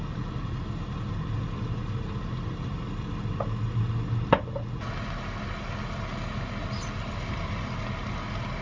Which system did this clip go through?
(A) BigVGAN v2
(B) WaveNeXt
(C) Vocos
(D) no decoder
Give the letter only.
D